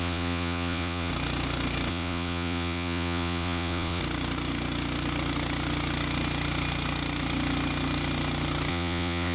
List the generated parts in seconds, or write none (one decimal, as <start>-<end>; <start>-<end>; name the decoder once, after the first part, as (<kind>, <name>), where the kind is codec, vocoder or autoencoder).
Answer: 0.0-1.1 (vocoder, Vocos); 1.9-4.0; 8.7-9.3